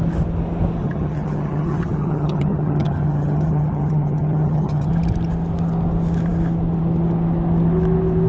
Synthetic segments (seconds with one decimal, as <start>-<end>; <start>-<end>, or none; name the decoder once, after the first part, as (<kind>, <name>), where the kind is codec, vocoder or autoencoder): 0.8-4.9 (vocoder, HiFi-GAN)